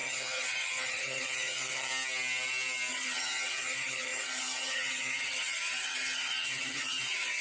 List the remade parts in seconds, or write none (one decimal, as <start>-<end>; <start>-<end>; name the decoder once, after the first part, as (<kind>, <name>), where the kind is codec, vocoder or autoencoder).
0.0-1.9 (vocoder, HiFi-GAN); 2.9-7.4